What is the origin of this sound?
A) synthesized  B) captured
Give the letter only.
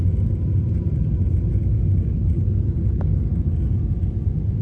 B